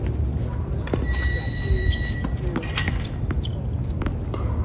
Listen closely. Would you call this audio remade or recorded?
recorded